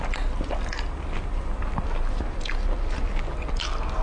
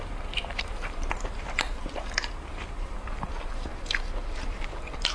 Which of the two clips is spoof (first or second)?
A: second